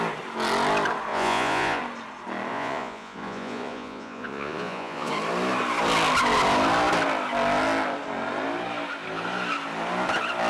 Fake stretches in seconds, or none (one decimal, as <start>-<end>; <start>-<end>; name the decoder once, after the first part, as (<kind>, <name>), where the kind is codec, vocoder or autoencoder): 1.1-1.8 (vocoder, Vocos); 2.5-5.1